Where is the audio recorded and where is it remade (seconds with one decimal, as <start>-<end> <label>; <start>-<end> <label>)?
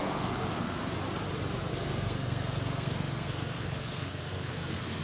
0.0-0.8 remade; 0.8-1.7 recorded; 1.7-5.0 remade